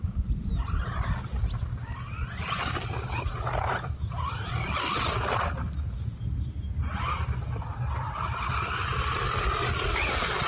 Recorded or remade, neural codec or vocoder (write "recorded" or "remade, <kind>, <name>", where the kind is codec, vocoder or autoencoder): recorded